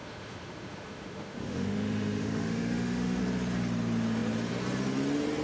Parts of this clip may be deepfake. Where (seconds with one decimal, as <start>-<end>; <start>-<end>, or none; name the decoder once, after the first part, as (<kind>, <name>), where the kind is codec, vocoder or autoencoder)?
0.0-3.2 (autoencoder, DAC-VAE)